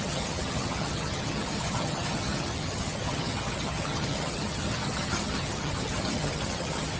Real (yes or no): no